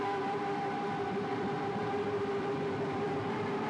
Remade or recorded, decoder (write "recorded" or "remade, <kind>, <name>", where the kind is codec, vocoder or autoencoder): remade, vocoder, BigVGAN v2